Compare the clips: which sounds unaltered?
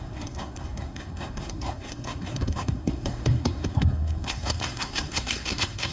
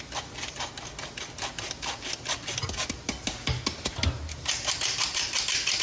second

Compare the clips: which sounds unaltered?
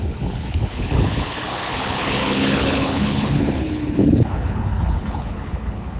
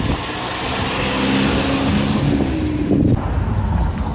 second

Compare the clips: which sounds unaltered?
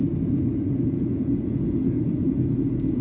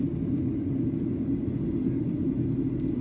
second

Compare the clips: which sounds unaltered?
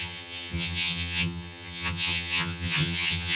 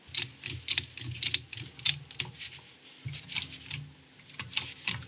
second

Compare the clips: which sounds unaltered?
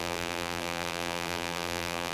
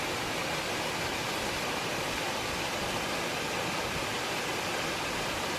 second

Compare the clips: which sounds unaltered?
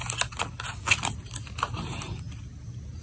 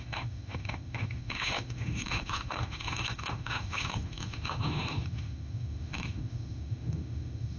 first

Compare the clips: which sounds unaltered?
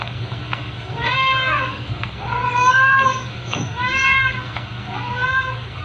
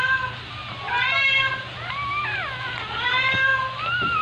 second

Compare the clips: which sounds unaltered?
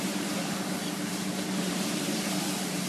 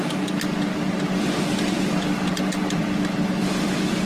second